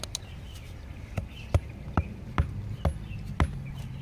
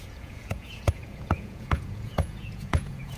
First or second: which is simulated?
second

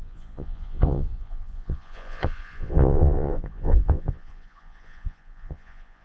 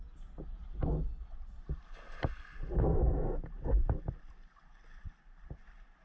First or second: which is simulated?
first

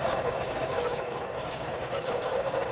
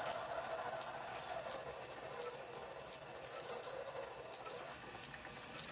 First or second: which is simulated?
first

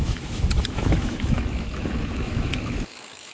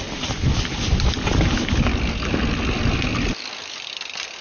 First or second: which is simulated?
first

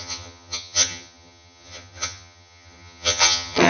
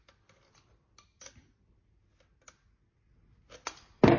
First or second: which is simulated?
first